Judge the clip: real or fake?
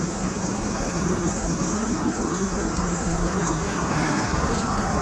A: fake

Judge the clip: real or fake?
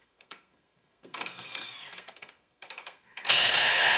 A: fake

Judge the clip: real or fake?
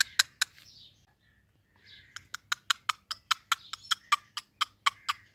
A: real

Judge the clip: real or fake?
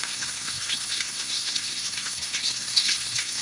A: fake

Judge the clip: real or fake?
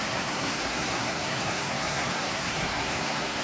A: fake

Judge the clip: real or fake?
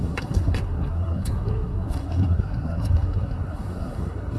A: fake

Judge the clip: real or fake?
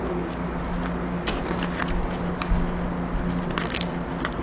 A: real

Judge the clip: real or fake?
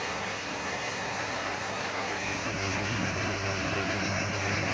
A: fake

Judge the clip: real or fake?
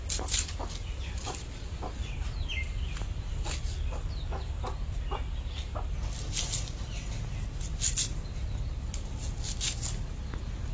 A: real